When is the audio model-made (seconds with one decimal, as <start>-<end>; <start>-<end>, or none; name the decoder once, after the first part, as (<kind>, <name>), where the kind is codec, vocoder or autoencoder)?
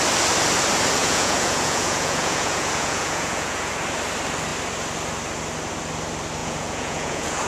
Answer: 1.0-3.7 (vocoder, Vocos); 6.4-7.5